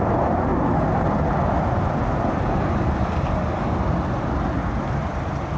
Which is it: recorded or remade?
recorded